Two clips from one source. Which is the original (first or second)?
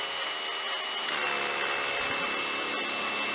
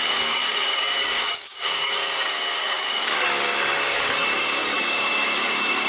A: first